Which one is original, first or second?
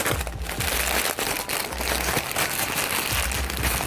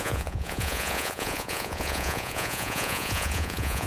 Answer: first